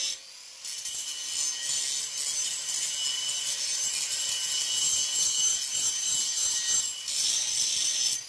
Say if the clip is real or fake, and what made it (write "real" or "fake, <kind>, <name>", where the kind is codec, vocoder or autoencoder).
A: real